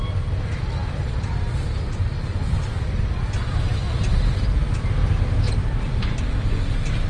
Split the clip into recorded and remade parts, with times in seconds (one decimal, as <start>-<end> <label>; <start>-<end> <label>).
0.0-7.1 recorded